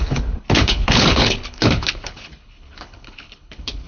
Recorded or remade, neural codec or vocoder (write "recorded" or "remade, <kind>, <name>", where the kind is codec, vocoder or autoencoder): remade, codec, HILCodec